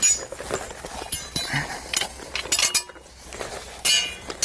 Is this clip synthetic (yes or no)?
no